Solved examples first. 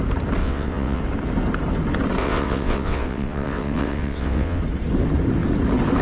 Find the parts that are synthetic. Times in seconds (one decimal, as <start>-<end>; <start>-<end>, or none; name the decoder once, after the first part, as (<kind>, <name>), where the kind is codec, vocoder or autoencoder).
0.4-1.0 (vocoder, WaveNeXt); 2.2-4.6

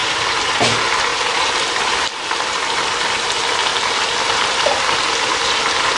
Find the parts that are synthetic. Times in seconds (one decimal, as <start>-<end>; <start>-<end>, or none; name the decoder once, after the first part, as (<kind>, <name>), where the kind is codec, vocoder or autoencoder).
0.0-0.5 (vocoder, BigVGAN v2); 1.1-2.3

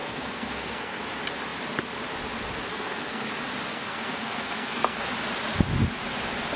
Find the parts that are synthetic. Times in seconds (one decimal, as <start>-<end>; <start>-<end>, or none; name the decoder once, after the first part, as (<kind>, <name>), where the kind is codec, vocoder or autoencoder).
0.0-1.0 (codec, SNAC); 2.7-3.3; 3.7-5.1